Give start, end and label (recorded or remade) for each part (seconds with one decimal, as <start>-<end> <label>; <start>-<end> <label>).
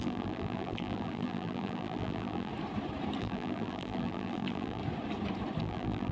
0.0-2.5 remade; 2.5-3.2 recorded; 3.2-4.8 remade; 4.8-5.6 recorded; 5.6-6.1 remade